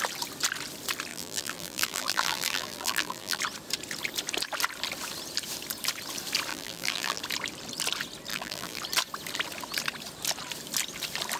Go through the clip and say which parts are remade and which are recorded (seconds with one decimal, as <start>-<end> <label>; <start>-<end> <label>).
0.0-1.1 recorded; 1.1-3.4 remade; 3.4-6.5 recorded; 6.5-7.2 remade; 7.2-8.3 recorded; 8.3-8.8 remade; 8.8-11.4 recorded